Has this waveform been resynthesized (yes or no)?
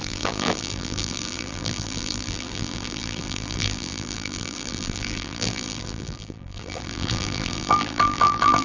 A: yes